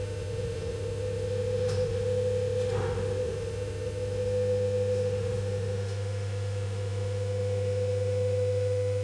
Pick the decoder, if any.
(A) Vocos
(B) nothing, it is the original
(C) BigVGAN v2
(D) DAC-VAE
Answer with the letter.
D